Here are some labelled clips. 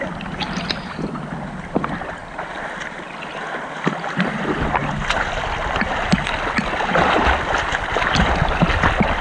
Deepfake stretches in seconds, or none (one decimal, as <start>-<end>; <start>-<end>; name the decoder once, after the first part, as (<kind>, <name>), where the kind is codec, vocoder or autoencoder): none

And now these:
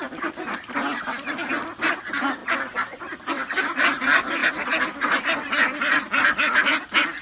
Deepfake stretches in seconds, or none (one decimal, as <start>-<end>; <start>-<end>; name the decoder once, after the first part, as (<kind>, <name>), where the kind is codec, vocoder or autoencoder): none

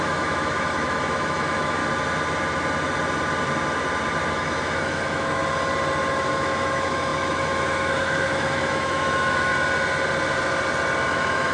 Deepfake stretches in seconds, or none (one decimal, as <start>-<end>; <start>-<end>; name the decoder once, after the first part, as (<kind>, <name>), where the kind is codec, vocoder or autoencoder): 0.0-1.8 (autoencoder, DAC-VAE); 4.3-5.4; 6.1-9.5; 11.1-11.5

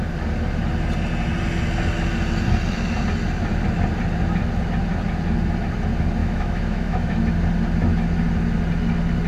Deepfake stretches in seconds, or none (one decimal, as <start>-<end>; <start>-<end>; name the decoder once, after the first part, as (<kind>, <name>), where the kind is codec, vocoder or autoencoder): 6.2-7.2 (autoencoder, DAC-VAE)

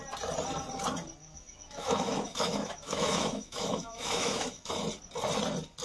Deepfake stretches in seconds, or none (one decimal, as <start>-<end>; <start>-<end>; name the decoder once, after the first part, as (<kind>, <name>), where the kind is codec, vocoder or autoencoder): 1.2-4.7 (autoencoder, DAC-VAE)

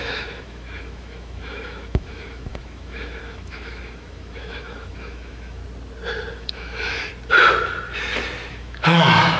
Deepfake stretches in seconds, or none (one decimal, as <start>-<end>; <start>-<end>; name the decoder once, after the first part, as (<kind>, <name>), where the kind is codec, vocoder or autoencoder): 0.0-5.6 (autoencoder, DAC-VAE); 6.3-7.1; 8.5-9.4

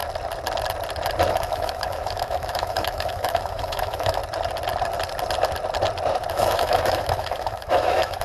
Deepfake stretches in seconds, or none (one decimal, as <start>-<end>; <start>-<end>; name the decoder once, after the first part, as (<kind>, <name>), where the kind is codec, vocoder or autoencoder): 1.3-4.2 (autoencoder, DAC-VAE); 6.3-8.2

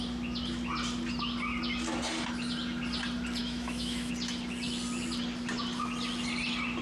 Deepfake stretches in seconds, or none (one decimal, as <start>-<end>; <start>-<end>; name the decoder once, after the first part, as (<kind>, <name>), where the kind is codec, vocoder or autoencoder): 3.4-4.1 (autoencoder, DAC-VAE)